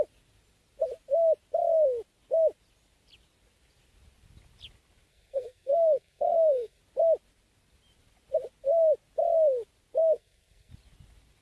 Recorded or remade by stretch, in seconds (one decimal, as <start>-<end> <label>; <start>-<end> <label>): 0.0-5.1 recorded; 5.1-6.8 remade; 6.8-10.0 recorded; 10.0-10.7 remade; 10.7-11.4 recorded